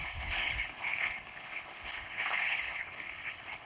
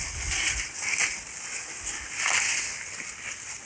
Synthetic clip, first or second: first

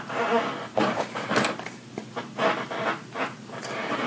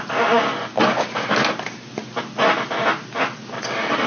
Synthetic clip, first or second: first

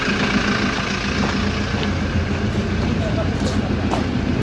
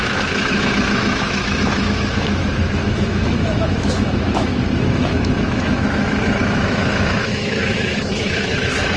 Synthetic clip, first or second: second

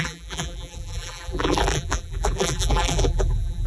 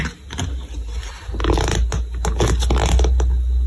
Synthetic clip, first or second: first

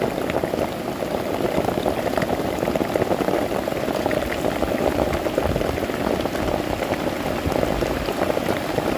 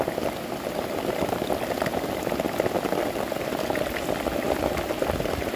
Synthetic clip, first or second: first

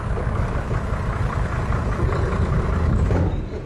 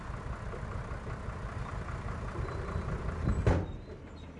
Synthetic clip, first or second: first